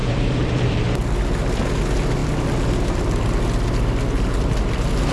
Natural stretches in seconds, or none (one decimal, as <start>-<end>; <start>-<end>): 0.8-5.1